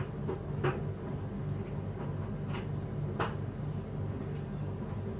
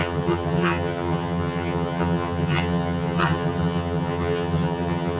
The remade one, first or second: second